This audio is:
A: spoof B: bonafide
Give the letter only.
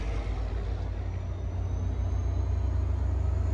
B